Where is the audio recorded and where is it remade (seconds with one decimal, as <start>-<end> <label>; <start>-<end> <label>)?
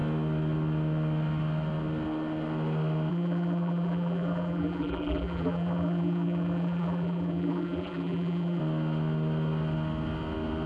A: 0.0-3.1 recorded; 3.1-8.6 remade; 8.6-10.7 recorded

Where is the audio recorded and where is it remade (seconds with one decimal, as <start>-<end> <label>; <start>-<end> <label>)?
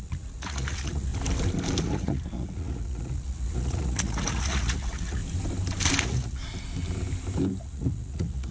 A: 0.0-1.1 remade; 1.1-1.8 recorded; 1.8-5.2 remade; 5.2-6.0 recorded; 6.0-6.4 remade; 6.4-7.6 recorded; 7.6-8.5 remade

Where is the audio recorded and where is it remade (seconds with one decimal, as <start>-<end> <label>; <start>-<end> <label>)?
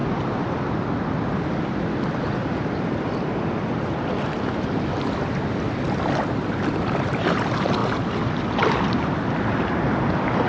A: 0.0-10.5 recorded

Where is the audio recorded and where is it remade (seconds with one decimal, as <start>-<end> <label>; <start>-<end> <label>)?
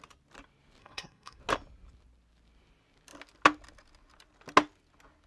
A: 0.0-0.8 recorded; 0.8-1.4 remade; 1.4-5.3 recorded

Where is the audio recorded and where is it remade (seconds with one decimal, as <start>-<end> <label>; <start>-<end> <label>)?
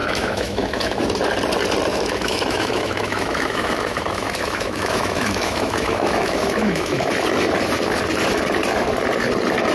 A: 0.0-1.0 remade; 1.0-1.9 recorded; 1.9-7.1 remade; 7.1-9.7 recorded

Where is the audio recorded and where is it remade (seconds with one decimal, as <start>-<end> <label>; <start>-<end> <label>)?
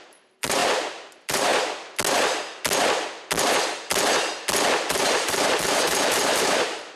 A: 0.0-1.5 remade; 1.5-4.9 recorded; 4.9-7.0 remade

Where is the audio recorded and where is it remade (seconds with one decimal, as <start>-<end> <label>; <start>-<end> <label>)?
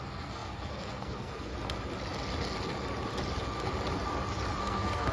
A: 0.0-1.5 remade; 1.5-4.6 recorded; 4.6-5.1 remade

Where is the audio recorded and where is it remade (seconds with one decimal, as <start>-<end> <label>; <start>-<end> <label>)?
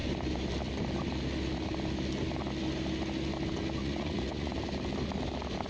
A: 0.0-3.8 recorded; 3.8-4.5 remade; 4.5-5.7 recorded